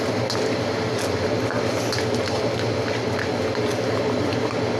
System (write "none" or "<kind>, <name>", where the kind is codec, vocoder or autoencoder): none